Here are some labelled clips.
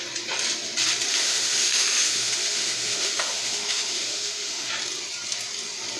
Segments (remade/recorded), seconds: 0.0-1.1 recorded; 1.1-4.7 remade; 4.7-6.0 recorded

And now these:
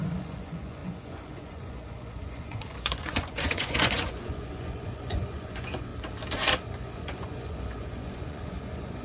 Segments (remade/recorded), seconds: 0.0-5.9 remade; 5.9-6.7 recorded; 6.7-9.0 remade